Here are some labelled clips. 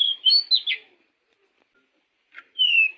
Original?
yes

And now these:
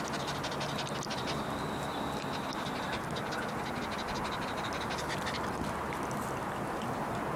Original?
yes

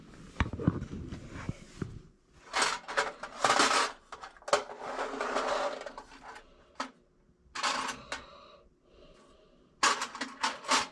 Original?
yes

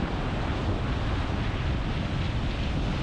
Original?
yes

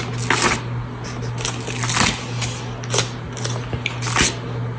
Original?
yes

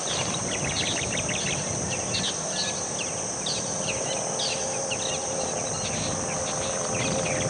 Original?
yes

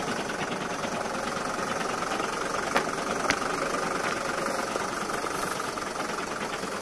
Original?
yes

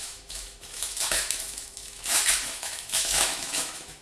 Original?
no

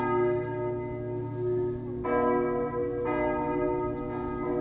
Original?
yes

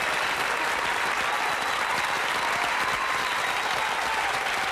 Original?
yes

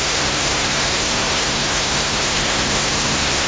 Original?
no